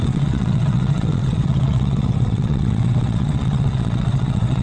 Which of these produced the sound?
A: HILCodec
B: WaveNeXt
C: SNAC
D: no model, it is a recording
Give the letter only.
B